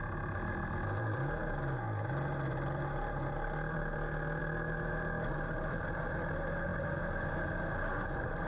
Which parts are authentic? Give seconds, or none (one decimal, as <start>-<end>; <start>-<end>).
0.0-8.5